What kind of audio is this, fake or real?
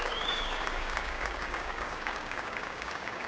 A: fake